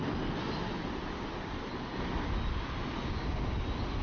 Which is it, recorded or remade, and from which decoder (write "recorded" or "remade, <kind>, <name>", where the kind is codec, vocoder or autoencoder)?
recorded